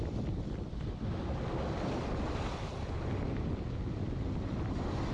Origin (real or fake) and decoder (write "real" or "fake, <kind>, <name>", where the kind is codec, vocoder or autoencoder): real